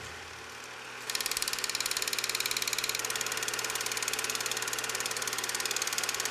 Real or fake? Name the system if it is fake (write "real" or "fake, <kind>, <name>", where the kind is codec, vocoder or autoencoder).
real